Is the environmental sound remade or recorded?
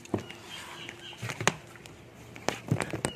recorded